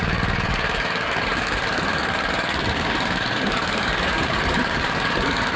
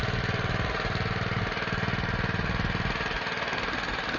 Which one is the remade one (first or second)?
first